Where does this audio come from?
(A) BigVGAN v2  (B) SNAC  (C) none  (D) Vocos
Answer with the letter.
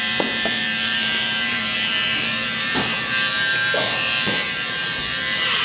A